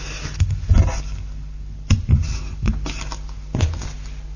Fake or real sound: real